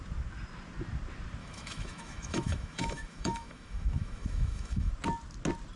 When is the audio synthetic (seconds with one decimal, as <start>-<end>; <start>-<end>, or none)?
1.4-4.9